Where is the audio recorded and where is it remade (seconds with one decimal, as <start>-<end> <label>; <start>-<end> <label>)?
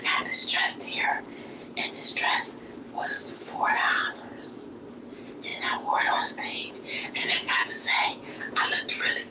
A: 0.0-5.5 recorded; 5.5-8.6 remade; 8.6-9.3 recorded